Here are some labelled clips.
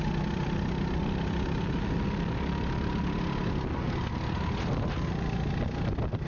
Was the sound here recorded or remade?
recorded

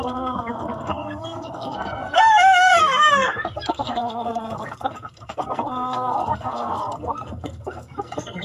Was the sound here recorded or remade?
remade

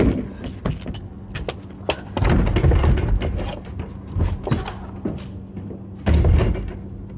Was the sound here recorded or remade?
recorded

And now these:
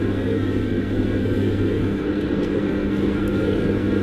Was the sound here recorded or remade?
remade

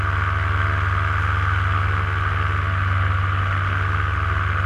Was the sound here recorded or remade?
recorded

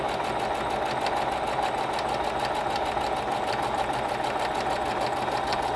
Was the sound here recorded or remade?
recorded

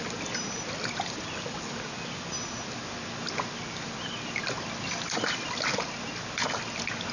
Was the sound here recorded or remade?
recorded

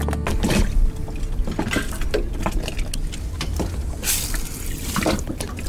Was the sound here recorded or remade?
recorded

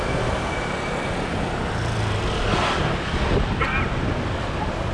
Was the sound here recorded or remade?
recorded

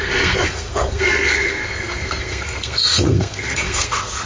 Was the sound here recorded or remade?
remade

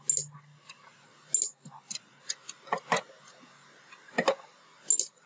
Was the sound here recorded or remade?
recorded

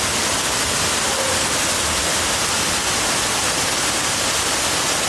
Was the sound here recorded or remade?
recorded